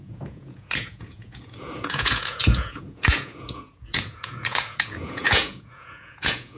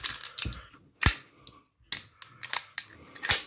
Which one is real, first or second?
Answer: second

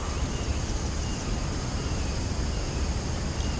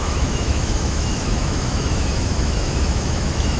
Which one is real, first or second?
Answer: first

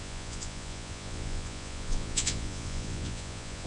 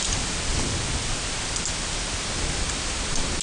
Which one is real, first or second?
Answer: second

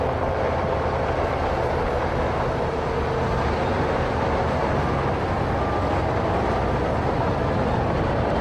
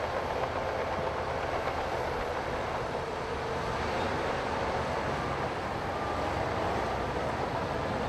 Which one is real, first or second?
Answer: first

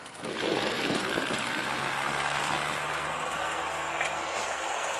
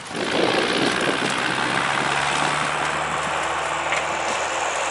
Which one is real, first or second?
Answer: second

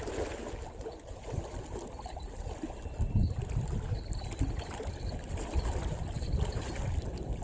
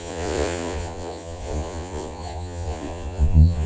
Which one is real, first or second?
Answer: first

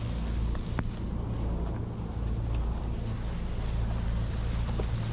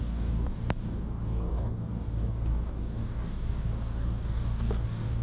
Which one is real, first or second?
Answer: first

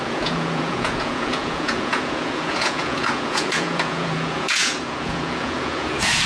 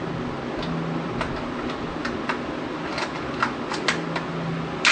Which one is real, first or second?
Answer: second